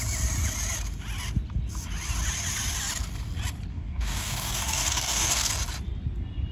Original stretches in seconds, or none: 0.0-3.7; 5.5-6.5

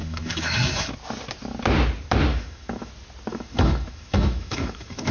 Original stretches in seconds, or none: 0.9-2.3; 2.9-3.3

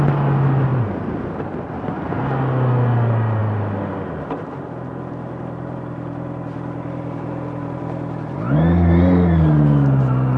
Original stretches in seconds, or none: 0.0-0.7; 1.4-10.4